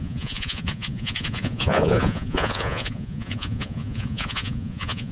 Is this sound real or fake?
fake